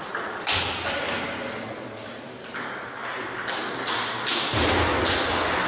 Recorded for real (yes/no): yes